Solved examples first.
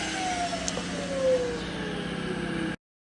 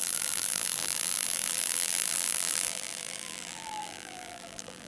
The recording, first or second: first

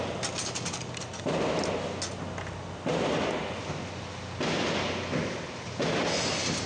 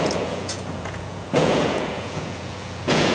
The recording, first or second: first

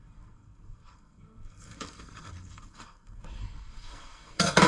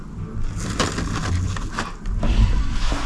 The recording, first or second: second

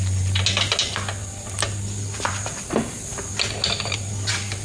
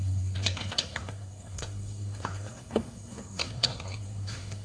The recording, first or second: first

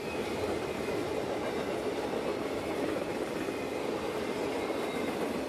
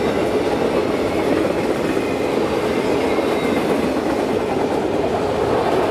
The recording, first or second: second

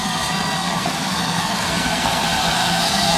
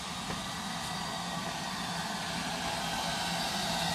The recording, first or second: second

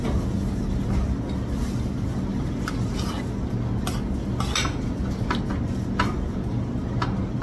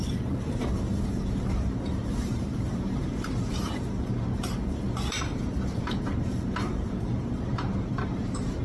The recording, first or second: first